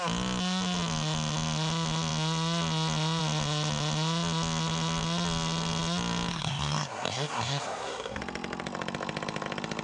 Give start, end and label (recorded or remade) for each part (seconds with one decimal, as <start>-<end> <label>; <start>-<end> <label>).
0.0-6.3 recorded; 6.3-8.2 remade; 8.2-9.8 recorded